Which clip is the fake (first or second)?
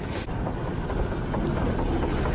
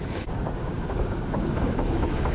second